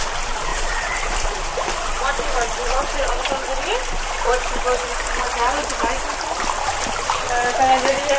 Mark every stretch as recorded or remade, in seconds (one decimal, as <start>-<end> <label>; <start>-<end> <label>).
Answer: 0.0-0.5 recorded; 0.5-1.3 remade; 1.3-8.2 recorded